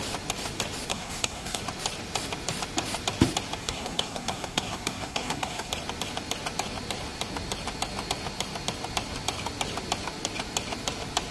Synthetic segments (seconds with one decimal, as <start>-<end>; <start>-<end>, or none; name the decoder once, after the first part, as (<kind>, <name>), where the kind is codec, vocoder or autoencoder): 0.9-1.6 (codec, SNAC); 3.6-5.7